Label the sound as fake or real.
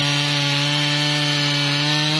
real